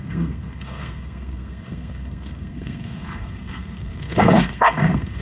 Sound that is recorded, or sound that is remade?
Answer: remade